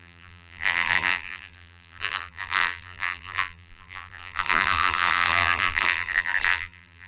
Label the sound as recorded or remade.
remade